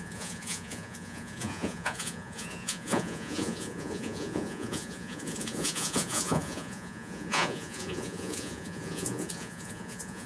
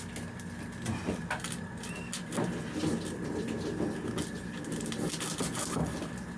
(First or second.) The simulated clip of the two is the first